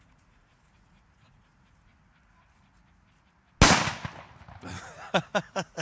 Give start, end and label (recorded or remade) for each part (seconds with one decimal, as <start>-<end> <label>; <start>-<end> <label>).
0.0-1.9 remade; 1.9-4.8 recorded; 4.8-5.8 remade